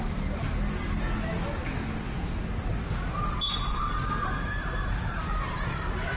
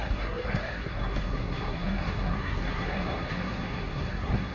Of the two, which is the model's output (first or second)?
second